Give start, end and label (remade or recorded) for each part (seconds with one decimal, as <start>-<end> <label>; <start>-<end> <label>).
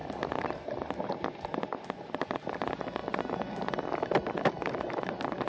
0.0-5.5 recorded